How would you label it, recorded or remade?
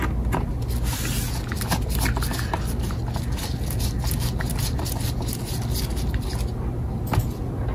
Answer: recorded